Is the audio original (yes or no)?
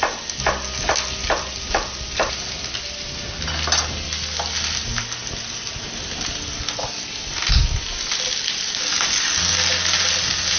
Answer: yes